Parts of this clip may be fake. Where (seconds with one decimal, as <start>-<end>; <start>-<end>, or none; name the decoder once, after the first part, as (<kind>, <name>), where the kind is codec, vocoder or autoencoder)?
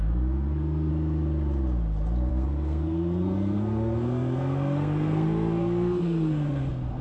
0.0-0.9 (codec, SNAC); 2.3-7.0